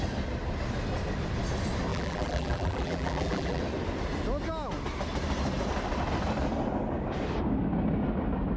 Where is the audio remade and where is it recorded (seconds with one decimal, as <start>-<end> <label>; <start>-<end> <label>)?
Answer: 0.0-1.9 recorded; 1.9-3.6 remade; 3.6-8.6 recorded